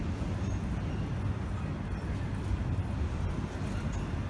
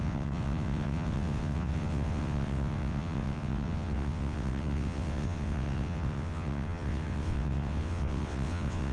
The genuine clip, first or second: first